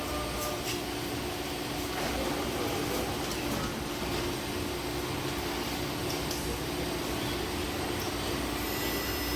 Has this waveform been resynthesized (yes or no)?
no